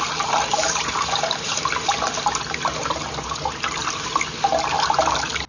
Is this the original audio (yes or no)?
yes